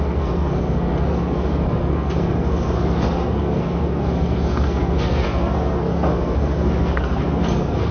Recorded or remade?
remade